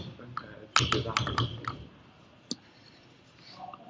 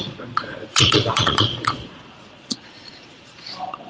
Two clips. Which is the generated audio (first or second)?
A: second